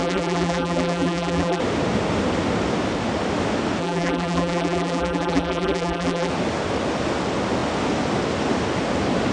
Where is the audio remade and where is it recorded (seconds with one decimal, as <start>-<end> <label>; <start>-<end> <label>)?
0.0-1.6 remade; 1.6-3.8 recorded; 3.8-6.3 remade; 6.3-9.3 recorded